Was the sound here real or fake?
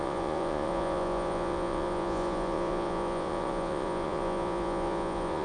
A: fake